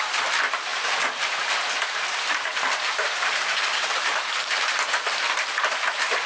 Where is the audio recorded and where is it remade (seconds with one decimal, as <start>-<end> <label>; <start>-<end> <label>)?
0.0-0.7 recorded; 0.7-4.5 remade; 4.5-6.3 recorded